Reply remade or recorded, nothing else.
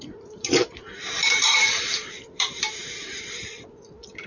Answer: remade